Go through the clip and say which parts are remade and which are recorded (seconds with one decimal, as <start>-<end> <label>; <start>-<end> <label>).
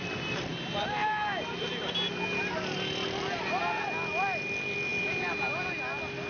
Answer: 0.0-6.3 recorded